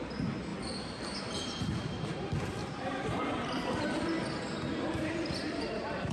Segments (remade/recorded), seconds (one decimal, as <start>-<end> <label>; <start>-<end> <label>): 0.0-2.6 recorded; 2.6-4.2 remade; 4.2-6.1 recorded